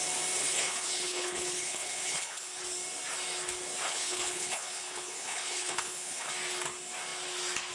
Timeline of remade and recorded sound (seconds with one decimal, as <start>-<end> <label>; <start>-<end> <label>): 0.0-0.4 recorded; 0.4-2.6 remade; 2.6-3.8 recorded; 3.8-6.3 remade; 6.3-7.7 recorded

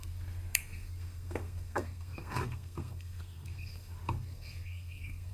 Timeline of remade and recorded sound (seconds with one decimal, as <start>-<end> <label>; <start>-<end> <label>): 0.0-5.3 remade

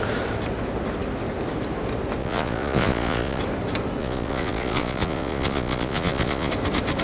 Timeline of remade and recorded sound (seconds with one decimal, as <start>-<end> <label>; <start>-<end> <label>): 0.0-2.2 recorded; 2.2-3.4 remade; 3.4-4.0 recorded; 4.0-6.5 remade; 6.5-7.0 recorded

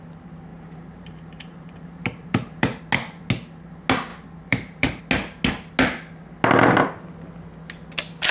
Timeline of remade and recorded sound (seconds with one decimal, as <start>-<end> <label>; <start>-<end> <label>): 0.0-0.5 recorded; 0.5-2.8 remade; 2.8-4.1 recorded; 4.1-5.0 remade; 5.0-8.3 recorded

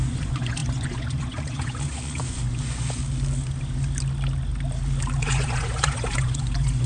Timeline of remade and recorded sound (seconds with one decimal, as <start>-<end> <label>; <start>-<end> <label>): 0.0-3.0 remade; 3.0-5.2 recorded; 5.2-6.9 remade

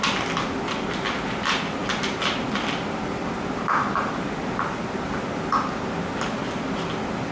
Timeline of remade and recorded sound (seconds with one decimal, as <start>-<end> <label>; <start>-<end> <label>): 0.0-7.3 recorded